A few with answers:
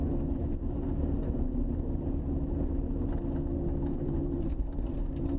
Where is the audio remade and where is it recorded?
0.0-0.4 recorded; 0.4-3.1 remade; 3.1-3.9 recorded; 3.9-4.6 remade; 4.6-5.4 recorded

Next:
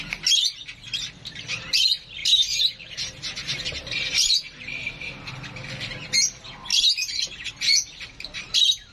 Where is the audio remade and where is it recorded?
0.0-2.2 recorded; 2.2-4.9 remade; 4.9-6.7 recorded; 6.7-8.9 remade

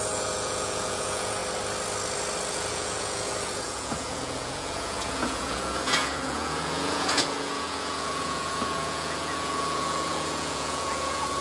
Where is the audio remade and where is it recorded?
0.0-1.4 remade; 1.4-2.5 recorded; 2.5-11.4 remade

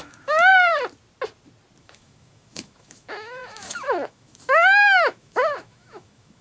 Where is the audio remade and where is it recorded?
0.0-0.5 remade; 0.5-1.8 recorded; 1.8-6.4 remade

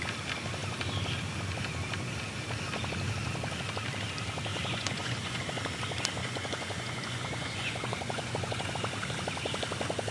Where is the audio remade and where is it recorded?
0.0-4.5 recorded; 4.5-5.4 remade; 5.4-6.2 recorded; 6.2-8.7 remade; 8.7-10.1 recorded